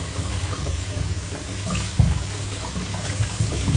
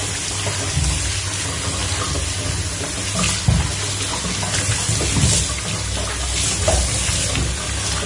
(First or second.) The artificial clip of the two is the first